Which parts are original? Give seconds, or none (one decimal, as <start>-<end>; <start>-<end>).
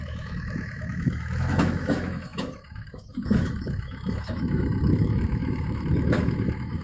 none